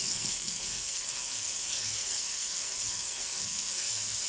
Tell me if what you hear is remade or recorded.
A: remade